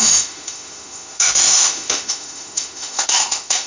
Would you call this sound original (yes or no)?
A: no